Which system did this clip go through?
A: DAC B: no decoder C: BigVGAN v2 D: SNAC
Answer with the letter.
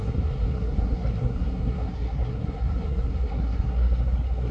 D